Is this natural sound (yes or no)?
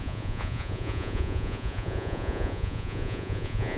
no